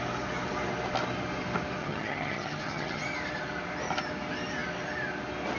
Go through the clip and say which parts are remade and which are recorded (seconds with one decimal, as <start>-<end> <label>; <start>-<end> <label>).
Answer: 0.0-1.8 recorded; 1.8-3.0 remade; 3.0-5.6 recorded